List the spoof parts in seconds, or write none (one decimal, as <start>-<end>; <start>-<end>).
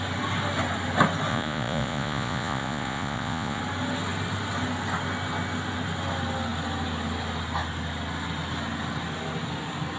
1.3-3.6